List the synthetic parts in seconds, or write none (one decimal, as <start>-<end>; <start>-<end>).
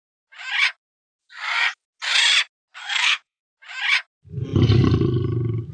2.8-3.4